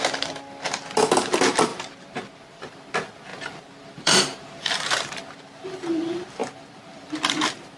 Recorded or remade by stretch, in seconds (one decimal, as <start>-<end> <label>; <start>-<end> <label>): 0.0-1.7 recorded; 1.7-2.6 remade; 2.6-3.3 recorded; 3.3-5.2 remade; 5.2-7.8 recorded